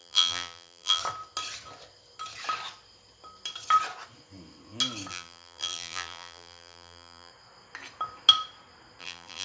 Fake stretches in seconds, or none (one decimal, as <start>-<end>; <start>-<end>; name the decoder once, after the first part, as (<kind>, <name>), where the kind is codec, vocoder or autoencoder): 0.0-1.0 (vocoder, BigVGAN v2); 5.1-7.3; 9.0-9.4